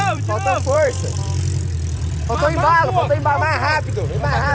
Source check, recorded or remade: remade